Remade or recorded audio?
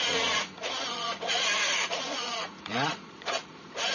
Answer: remade